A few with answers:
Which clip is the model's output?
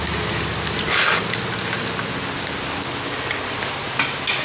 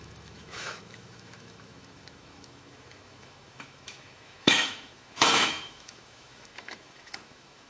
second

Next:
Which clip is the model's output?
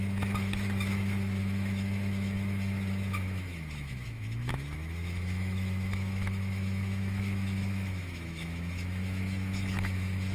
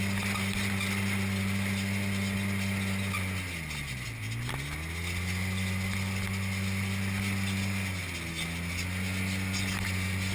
first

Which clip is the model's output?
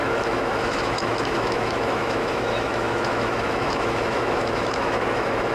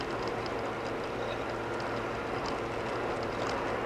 first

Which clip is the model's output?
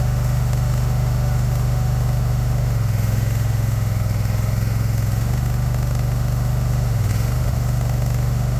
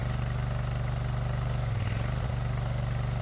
first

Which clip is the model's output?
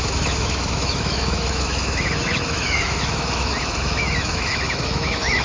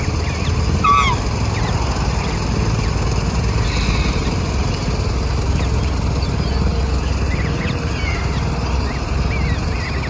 first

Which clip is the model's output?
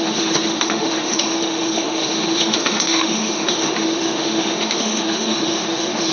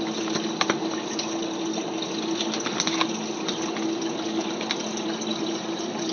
first